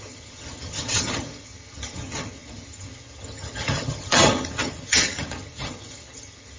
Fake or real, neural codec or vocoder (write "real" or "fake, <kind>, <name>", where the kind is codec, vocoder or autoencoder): fake, vocoder, HiFi-GAN